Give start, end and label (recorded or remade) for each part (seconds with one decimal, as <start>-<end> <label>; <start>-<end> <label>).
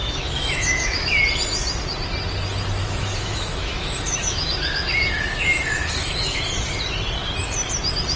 0.0-1.2 remade; 1.2-2.8 recorded; 2.8-6.4 remade; 6.4-8.2 recorded